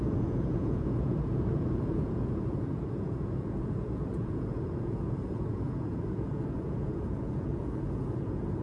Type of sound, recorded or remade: remade